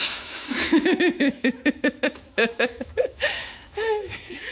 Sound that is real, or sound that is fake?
fake